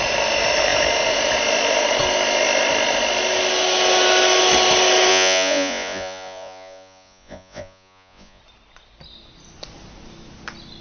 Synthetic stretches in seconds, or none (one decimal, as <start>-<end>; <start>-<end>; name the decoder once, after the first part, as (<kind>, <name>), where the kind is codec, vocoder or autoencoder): 5.1-8.4 (vocoder, Vocos)